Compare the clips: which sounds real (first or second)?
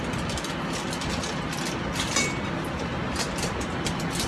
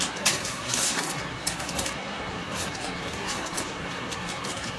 first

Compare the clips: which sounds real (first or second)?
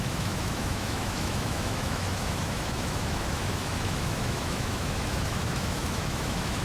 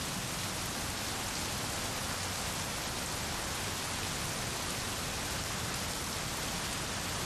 second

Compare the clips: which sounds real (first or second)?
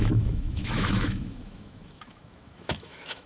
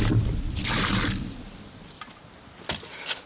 second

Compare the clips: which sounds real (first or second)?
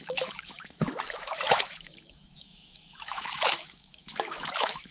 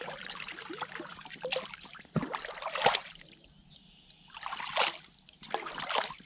second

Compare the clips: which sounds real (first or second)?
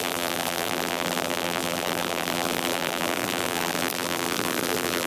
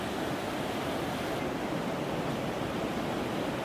second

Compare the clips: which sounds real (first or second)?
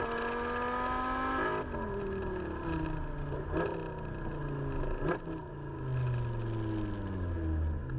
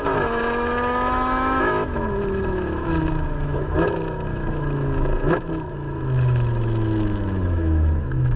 first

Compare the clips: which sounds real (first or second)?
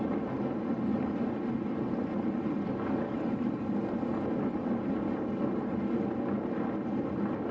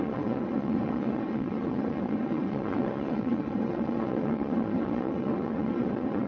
first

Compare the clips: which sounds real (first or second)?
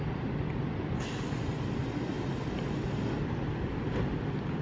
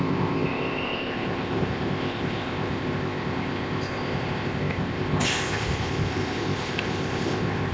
first